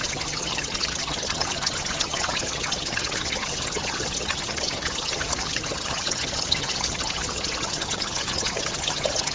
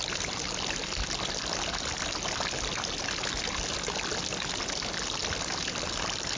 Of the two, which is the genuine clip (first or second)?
second